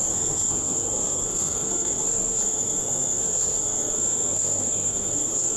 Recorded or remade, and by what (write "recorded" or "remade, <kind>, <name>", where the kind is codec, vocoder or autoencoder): remade, codec, SNAC